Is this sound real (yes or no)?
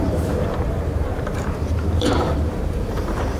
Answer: no